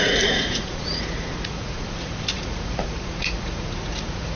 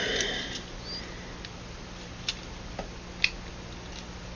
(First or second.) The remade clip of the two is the first